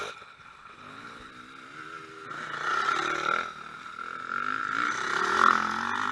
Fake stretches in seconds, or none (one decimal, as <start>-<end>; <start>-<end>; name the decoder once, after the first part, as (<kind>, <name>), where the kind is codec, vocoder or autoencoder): 0.0-1.3 (codec, HILCodec)